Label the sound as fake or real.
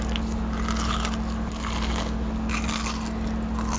real